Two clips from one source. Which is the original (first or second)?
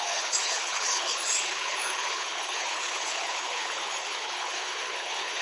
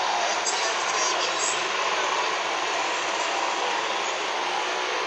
second